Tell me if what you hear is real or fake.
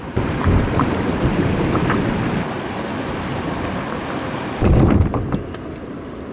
real